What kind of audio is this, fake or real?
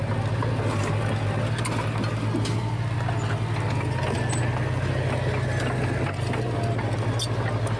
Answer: real